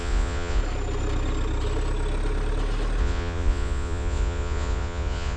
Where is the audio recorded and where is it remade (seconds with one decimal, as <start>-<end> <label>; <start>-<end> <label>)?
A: 0.0-0.6 remade; 0.6-3.0 recorded; 3.0-5.4 remade